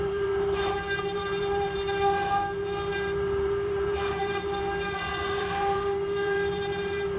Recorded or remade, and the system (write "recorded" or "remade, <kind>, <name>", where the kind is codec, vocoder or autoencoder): remade, vocoder, BigVGAN v2